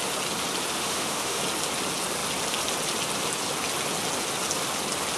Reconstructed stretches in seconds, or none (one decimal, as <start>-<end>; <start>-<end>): 0.8-1.4